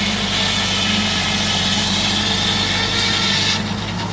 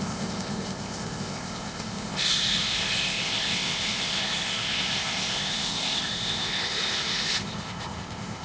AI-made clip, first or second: second